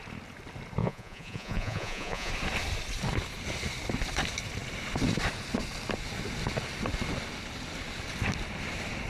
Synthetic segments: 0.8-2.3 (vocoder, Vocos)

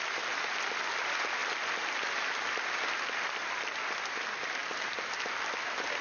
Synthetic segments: 4.6-6.0 (vocoder, BigVGAN v2)

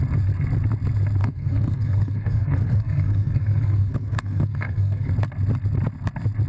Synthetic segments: 1.2-5.1 (codec, SNAC)

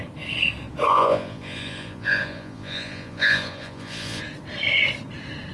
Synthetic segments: 0.9-4.2 (vocoder, Vocos)

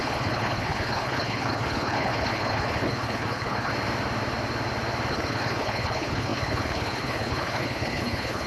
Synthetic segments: 0.0-3.7 (codec, HILCodec); 5.1-8.5